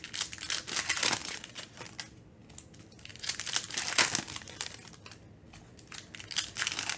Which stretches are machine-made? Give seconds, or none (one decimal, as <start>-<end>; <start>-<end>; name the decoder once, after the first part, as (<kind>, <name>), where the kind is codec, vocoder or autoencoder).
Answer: 1.2-1.8 (vocoder, Vocos)